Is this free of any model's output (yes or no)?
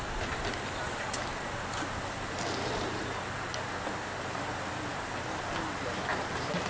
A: yes